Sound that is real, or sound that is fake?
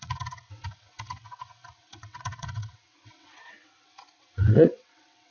fake